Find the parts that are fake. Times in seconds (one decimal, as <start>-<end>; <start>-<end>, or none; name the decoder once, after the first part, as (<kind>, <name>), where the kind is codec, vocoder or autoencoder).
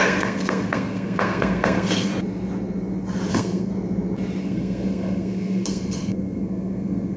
0.0-2.1 (codec, SNAC); 3.3-3.7; 4.4-7.2